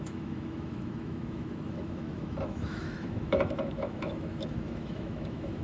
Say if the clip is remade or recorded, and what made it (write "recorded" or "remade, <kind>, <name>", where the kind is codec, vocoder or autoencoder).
remade, autoencoder, DAC-VAE